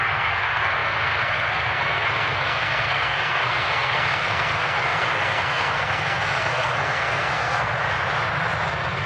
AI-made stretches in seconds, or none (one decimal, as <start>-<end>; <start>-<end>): 0.0-7.7; 8.7-9.1